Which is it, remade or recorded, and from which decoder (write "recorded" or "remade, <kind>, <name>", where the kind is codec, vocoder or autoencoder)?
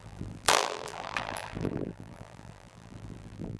remade, vocoder, BigVGAN v2